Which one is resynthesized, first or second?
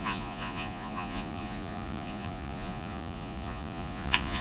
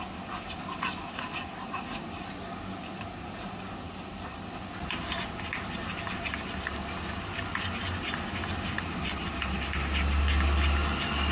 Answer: first